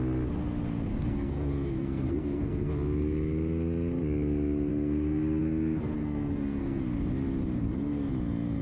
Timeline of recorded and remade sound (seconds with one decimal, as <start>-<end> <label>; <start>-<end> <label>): 0.0-0.9 recorded; 0.9-2.7 remade; 2.7-4.7 recorded; 4.7-5.4 remade; 5.4-6.0 recorded; 6.0-6.8 remade; 6.8-7.6 recorded; 7.6-8.1 remade; 8.1-8.6 recorded